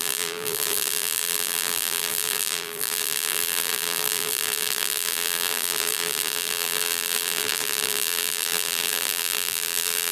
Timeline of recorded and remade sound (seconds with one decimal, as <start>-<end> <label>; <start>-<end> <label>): 0.0-10.1 remade